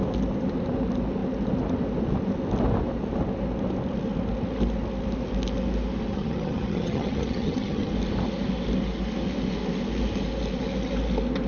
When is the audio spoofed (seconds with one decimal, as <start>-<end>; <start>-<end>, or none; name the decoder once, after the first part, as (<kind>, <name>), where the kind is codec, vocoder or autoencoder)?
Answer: 6.1-7.9 (vocoder, HiFi-GAN)